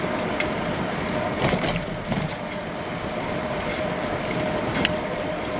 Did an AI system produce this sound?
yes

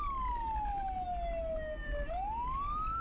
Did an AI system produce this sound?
no